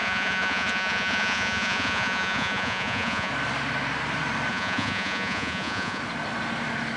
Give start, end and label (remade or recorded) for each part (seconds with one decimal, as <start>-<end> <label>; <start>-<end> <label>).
0.0-3.3 remade; 3.3-4.5 recorded; 4.5-6.0 remade; 6.0-7.0 recorded